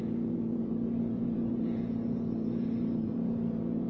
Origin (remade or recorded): remade